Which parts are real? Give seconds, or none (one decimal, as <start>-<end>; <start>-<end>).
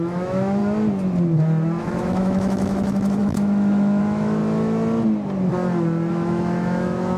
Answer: 0.6-1.8; 4.4-6.1